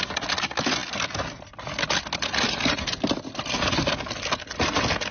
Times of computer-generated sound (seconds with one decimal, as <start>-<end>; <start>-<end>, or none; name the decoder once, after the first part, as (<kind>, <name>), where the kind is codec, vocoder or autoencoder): none